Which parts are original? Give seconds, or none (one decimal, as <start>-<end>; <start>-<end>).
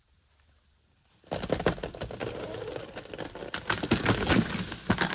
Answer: 0.0-5.1